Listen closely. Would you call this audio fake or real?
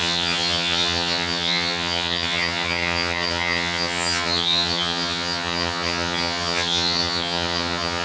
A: fake